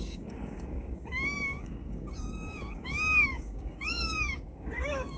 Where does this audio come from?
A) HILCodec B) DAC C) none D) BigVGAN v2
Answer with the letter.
B